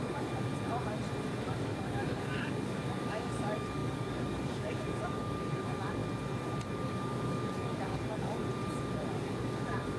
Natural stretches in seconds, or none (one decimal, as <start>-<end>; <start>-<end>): 0.5-1.3; 6.0-6.7; 8.4-9.1